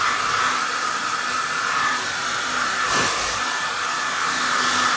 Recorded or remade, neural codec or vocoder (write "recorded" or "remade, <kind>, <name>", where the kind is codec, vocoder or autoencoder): recorded